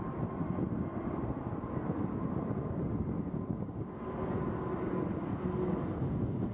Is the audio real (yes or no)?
yes